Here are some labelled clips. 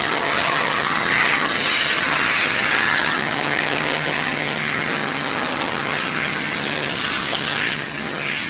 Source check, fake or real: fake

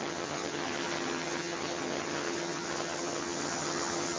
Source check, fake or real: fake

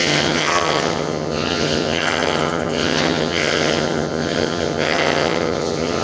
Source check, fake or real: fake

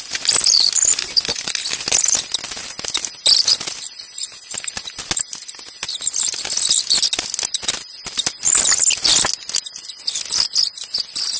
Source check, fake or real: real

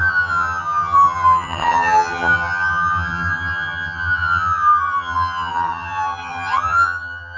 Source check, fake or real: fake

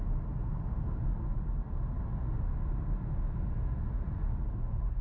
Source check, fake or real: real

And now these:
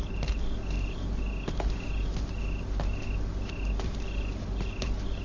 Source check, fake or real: real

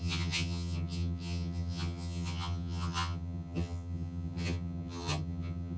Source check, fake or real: fake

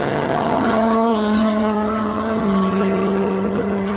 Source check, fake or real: fake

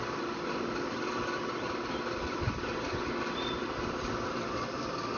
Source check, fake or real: real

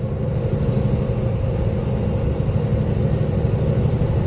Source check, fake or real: real